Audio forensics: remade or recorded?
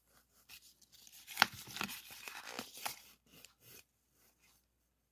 remade